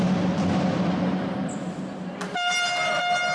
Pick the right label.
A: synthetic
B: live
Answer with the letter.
B